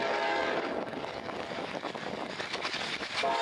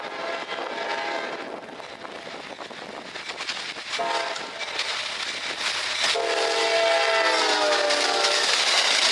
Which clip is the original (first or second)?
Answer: second